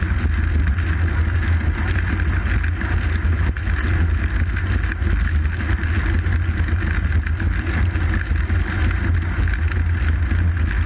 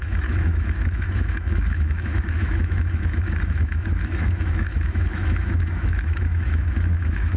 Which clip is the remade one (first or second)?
second